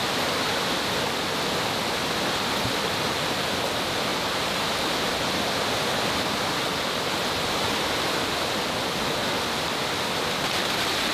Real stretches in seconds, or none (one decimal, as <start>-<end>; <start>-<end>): 1.8-4.1; 5.1-11.1